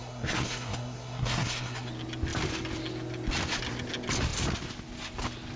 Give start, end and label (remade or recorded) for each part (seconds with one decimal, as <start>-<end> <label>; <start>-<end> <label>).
0.0-1.9 remade; 1.9-5.6 recorded